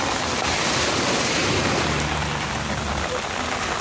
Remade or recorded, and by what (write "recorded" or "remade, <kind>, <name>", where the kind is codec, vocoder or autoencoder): recorded